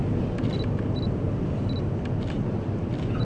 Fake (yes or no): no